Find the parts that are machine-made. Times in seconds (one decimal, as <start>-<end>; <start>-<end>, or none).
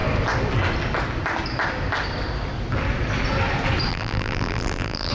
3.9-5.1